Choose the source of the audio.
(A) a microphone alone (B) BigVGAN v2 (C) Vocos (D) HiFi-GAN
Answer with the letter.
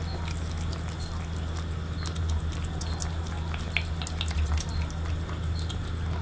A